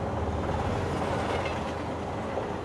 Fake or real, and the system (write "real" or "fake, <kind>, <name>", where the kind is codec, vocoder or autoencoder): real